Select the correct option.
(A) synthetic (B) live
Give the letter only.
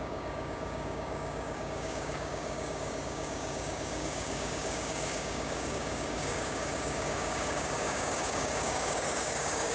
A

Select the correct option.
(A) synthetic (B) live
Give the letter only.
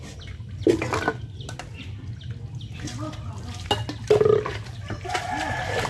B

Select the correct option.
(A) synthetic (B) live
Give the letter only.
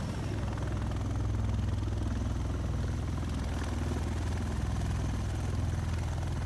B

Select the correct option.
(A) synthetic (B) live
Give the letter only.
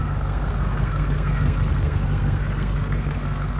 A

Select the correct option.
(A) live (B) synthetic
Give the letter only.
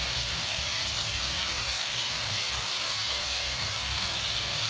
B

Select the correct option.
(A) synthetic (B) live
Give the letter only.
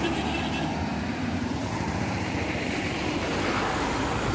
A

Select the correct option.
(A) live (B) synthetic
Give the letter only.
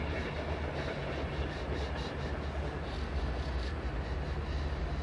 A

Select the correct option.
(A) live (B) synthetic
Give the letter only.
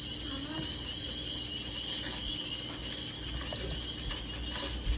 A